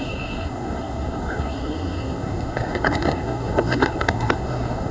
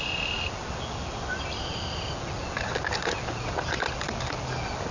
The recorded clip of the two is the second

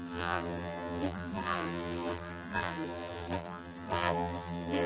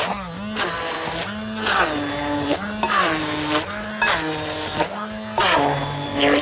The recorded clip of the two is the second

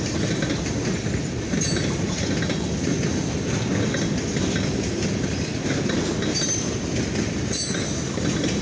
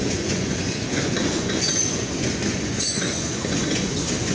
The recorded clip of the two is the first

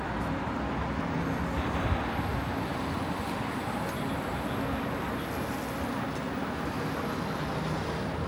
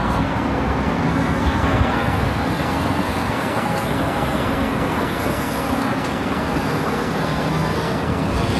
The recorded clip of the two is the first